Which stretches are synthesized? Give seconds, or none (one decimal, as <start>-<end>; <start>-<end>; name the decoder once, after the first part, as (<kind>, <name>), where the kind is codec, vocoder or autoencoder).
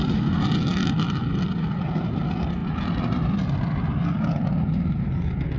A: 0.7-2.2 (vocoder, BigVGAN v2); 2.6-4.8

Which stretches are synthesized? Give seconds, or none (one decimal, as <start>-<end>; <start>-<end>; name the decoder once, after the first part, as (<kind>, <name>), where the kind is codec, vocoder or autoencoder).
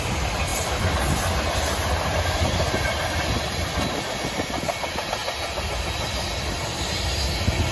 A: none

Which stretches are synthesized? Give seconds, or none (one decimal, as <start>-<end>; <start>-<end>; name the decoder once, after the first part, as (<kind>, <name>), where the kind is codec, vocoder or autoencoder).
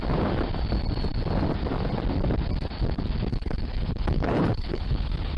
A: 3.3-5.4 (codec, HILCodec)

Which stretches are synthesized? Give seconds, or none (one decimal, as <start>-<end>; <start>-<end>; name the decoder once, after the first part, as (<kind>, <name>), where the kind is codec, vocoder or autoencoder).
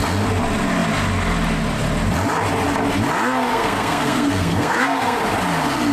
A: 3.5-5.2 (codec, SNAC)